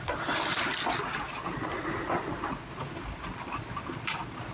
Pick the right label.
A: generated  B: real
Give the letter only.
B